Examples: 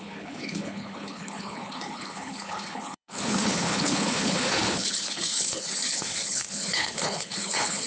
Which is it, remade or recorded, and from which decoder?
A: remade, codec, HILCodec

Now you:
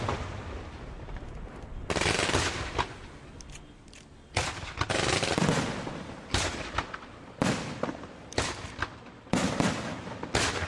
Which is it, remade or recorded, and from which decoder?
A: recorded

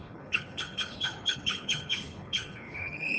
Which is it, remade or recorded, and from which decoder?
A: remade, codec, HILCodec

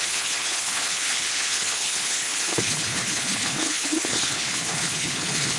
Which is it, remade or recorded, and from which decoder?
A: remade, codec, HILCodec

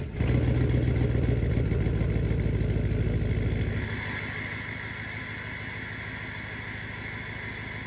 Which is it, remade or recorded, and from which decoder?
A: recorded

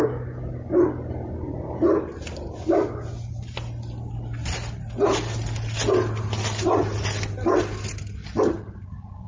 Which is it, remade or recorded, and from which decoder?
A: recorded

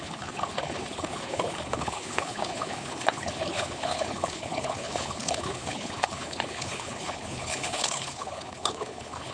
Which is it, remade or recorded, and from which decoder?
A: remade, codec, HILCodec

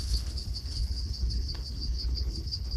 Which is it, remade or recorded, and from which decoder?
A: remade, codec, HILCodec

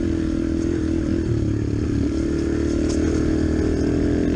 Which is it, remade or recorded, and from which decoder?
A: recorded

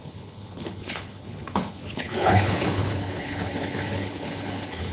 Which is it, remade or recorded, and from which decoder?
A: remade, codec, HILCodec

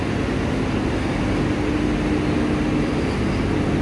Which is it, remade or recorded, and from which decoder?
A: recorded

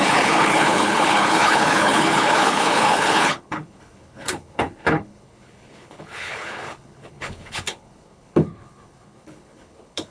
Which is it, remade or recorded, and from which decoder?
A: remade, codec, HILCodec